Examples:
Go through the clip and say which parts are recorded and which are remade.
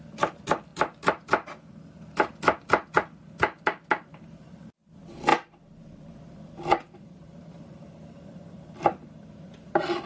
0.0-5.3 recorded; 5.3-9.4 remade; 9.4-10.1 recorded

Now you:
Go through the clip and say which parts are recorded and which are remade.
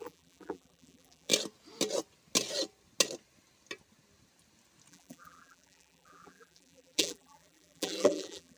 0.0-1.3 remade; 1.3-4.9 recorded; 4.9-8.6 remade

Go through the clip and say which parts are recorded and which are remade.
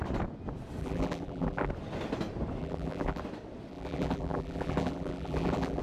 0.0-0.8 recorded; 0.8-1.7 remade; 1.7-2.6 recorded; 2.6-3.2 remade; 3.2-3.7 recorded; 3.7-5.8 remade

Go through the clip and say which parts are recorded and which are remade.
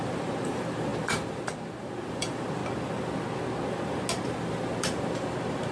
0.0-2.6 remade; 2.6-4.2 recorded; 4.2-5.7 remade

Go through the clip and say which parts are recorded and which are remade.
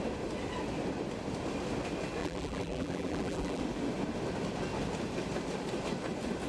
0.0-2.2 recorded; 2.2-3.6 remade; 3.6-6.5 recorded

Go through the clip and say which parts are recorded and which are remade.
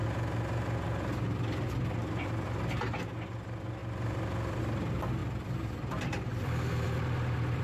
0.0-3.8 recorded; 3.8-4.6 remade; 4.6-5.2 recorded; 5.2-7.6 remade